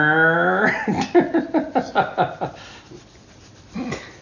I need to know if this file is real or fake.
real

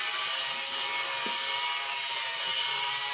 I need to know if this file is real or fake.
real